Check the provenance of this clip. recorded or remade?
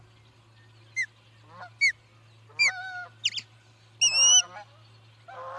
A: recorded